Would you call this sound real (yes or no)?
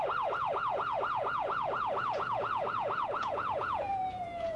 no